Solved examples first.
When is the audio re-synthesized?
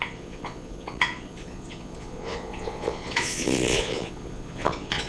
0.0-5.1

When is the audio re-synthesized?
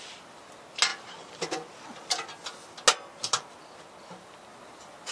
none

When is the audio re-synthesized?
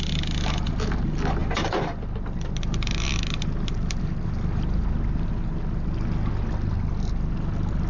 none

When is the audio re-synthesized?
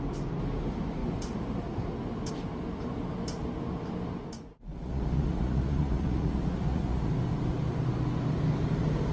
4.5-7.1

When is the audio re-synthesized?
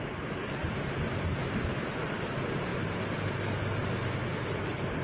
none